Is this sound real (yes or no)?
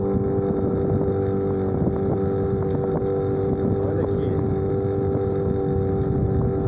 yes